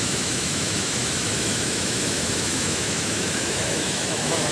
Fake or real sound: fake